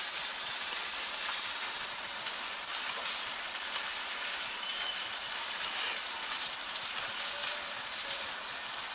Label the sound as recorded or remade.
recorded